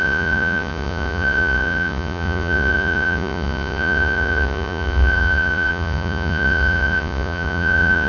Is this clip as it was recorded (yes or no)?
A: no